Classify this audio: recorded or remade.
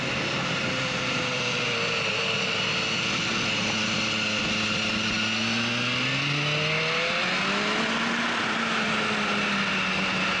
recorded